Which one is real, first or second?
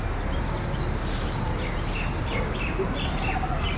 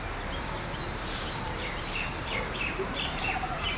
first